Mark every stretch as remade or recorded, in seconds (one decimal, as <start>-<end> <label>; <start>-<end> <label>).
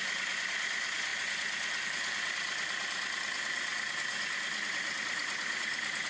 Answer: 0.0-6.1 recorded